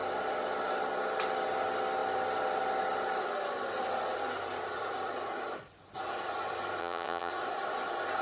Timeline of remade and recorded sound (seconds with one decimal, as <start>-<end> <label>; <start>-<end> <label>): 0.0-6.8 recorded; 6.8-7.3 remade; 7.3-8.2 recorded